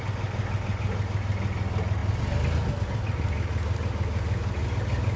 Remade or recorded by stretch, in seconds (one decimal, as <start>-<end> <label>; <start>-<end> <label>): 0.0-5.2 recorded